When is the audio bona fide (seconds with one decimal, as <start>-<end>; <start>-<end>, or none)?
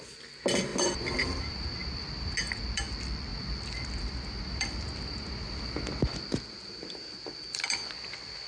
0.0-8.5